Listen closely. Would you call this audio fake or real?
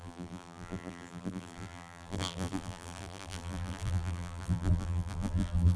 fake